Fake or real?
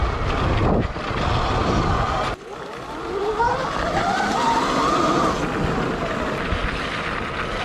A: real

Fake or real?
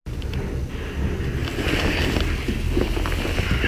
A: real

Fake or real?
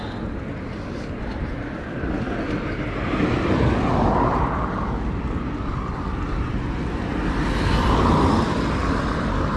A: real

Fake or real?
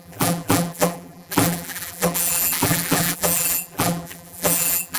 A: fake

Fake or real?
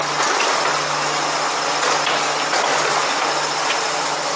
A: real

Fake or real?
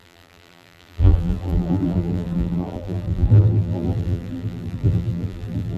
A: fake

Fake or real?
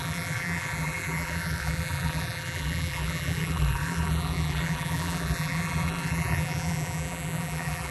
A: fake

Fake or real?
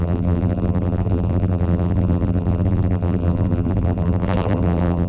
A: fake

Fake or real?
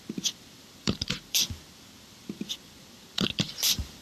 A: fake